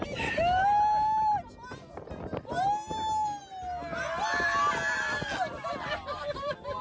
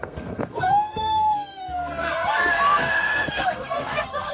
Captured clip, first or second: first